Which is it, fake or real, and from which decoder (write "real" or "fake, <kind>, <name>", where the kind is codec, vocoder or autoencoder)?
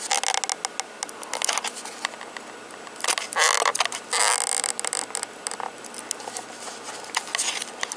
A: real